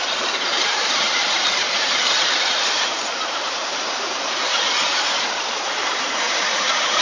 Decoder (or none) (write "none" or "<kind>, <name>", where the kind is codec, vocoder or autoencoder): vocoder, BigVGAN v2